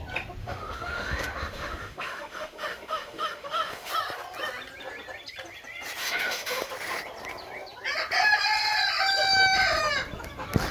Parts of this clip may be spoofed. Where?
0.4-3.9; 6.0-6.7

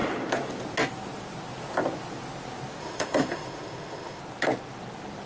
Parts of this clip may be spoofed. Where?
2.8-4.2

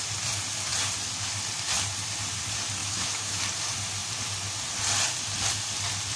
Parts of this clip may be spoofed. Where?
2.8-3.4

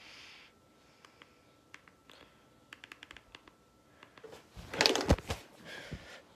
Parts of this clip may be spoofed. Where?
none

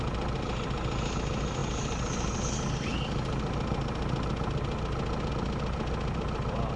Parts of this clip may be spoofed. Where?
none

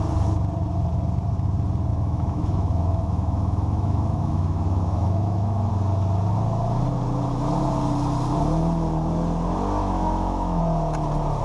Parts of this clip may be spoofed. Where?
1.9-5.7; 9.8-10.6

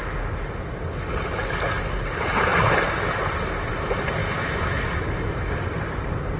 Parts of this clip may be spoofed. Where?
4.2-5.5

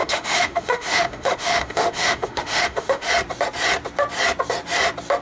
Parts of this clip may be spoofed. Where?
0.0-3.1